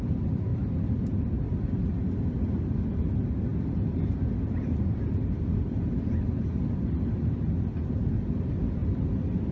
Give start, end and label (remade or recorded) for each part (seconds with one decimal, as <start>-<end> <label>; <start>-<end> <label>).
0.0-9.5 recorded